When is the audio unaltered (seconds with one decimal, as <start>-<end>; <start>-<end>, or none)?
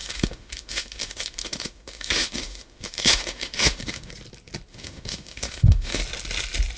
4.1-4.7; 6.0-6.8